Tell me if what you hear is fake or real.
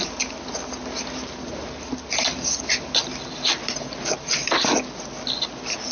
real